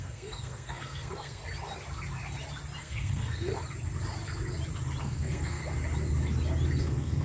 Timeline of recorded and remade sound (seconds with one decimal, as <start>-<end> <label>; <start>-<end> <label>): 0.0-1.4 remade; 1.4-2.8 recorded; 2.8-3.5 remade; 3.5-5.0 recorded; 5.0-5.6 remade; 5.6-6.8 recorded; 6.8-7.2 remade